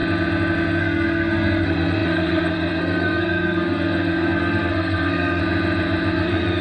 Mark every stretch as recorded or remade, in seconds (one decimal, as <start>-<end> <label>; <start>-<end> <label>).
0.0-0.8 recorded; 0.8-5.4 remade; 5.4-6.1 recorded; 6.1-6.6 remade

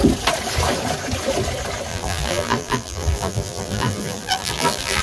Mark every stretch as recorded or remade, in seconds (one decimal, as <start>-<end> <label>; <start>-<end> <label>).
0.0-1.9 recorded; 1.9-5.0 remade

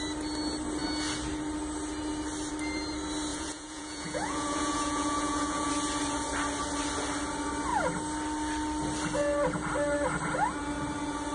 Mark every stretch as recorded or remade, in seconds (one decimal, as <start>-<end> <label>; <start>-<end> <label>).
0.0-3.3 recorded; 3.3-5.7 remade; 5.7-11.3 recorded

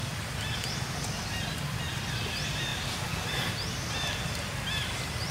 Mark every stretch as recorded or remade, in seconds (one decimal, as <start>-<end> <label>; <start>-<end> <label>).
0.0-2.7 recorded; 2.7-3.5 remade; 3.5-5.3 recorded

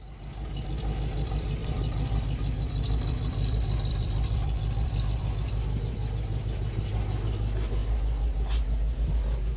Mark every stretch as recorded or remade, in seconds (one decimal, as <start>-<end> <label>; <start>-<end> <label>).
0.0-1.6 recorded; 1.6-5.3 remade; 5.3-9.6 recorded

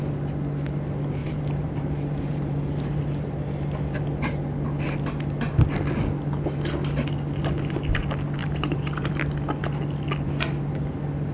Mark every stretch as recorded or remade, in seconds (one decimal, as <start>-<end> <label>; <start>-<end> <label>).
0.0-1.2 recorded; 1.2-3.0 remade; 3.0-8.4 recorded; 8.4-9.1 remade; 9.1-11.3 recorded

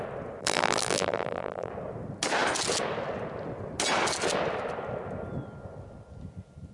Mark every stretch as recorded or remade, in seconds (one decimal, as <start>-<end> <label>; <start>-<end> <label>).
0.0-0.4 recorded; 0.4-1.7 remade; 1.7-6.7 recorded

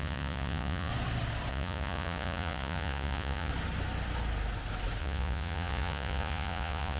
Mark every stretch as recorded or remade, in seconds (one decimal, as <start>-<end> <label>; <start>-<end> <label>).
0.0-0.9 remade; 0.9-1.5 recorded; 1.5-3.5 remade; 3.5-5.0 recorded; 5.0-7.0 remade